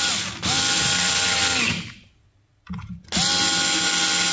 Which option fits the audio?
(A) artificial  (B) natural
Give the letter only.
B